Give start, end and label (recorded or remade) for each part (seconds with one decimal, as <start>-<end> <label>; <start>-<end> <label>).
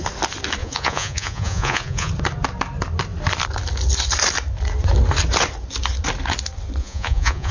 0.0-0.6 recorded; 0.6-2.1 remade; 2.1-6.8 recorded; 6.8-7.5 remade